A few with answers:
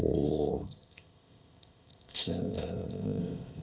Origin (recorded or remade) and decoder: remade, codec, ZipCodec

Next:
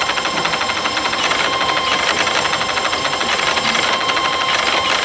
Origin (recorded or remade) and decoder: remade, vocoder, BigVGAN v2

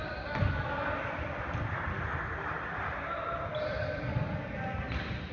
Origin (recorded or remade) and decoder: recorded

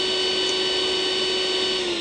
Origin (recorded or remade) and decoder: recorded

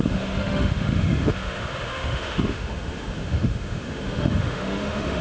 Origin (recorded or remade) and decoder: remade, autoencoder, DAC-VAE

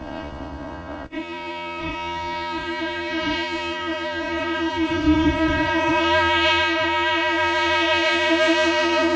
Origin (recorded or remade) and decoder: remade, vocoder, Vocos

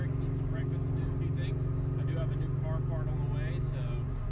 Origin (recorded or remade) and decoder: recorded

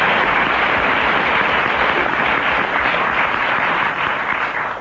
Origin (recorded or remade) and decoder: recorded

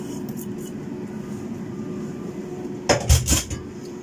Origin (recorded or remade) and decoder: recorded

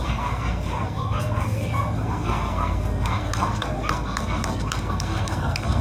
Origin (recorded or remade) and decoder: remade, codec, SNAC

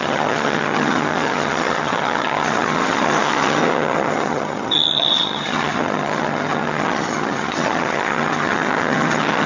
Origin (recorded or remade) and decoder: remade, vocoder, HiFi-GAN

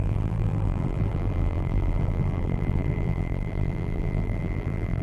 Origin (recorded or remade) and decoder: remade, vocoder, BigVGAN v2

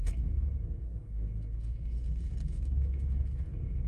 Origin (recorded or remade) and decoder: remade, codec, DAC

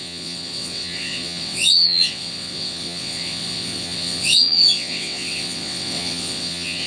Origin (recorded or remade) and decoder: remade, vocoder, WaveNeXt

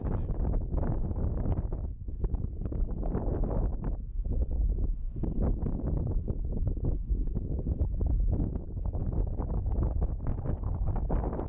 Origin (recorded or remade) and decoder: recorded